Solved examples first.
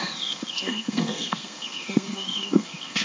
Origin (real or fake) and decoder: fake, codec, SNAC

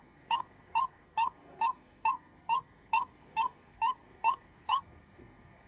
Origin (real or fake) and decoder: fake, codec, SNAC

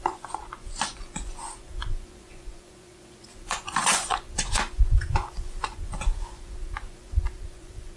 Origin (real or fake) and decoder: fake, vocoder, Vocos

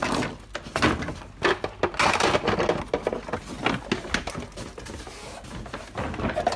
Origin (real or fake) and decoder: real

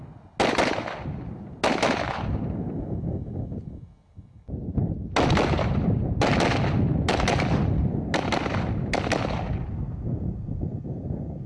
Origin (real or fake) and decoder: real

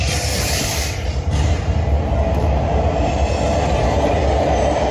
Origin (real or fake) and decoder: fake, vocoder, BigVGAN v2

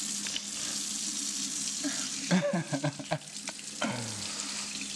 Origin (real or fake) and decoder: real